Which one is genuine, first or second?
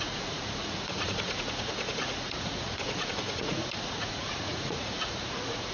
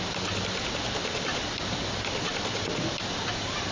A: second